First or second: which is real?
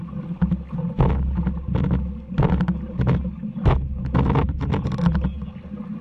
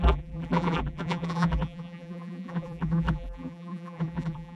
first